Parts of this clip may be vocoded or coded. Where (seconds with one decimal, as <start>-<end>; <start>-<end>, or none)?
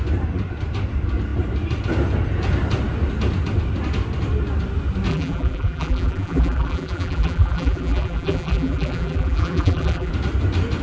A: 5.1-10.1